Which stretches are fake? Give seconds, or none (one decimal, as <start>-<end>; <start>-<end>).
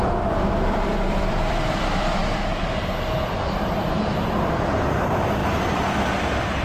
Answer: 0.0-5.4; 6.0-6.6